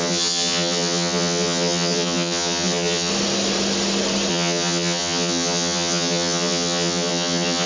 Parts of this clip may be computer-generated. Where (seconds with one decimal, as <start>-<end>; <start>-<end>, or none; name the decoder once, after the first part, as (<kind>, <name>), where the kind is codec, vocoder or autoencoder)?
0.0-3.1 (vocoder, HiFi-GAN); 4.3-7.7